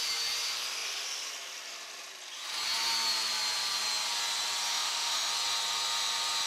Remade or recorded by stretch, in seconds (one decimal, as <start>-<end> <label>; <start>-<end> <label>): 0.0-4.7 recorded; 4.7-5.3 remade; 5.3-6.5 recorded